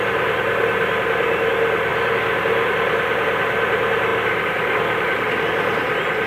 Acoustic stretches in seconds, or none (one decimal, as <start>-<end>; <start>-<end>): 0.0-6.3